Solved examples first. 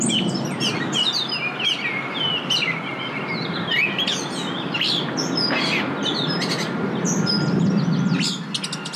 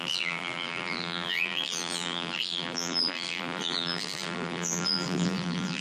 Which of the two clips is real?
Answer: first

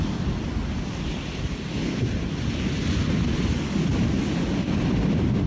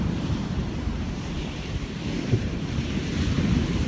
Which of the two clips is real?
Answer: first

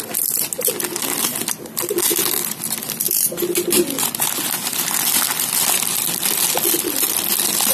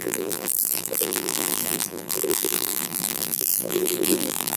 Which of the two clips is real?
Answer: first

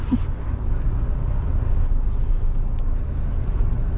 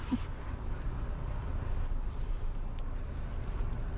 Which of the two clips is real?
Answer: first